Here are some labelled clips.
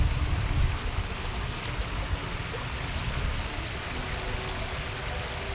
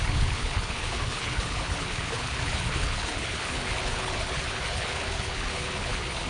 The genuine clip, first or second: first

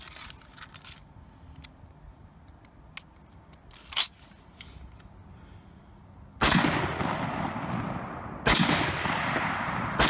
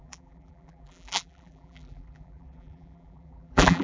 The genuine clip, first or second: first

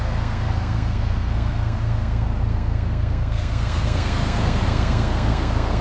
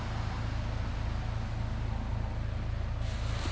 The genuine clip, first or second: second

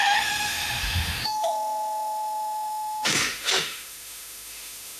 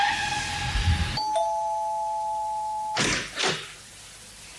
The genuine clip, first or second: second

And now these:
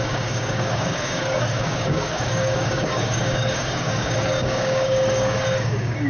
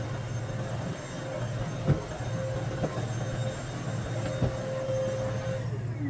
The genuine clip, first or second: second